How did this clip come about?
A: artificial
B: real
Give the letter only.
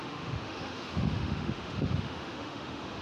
A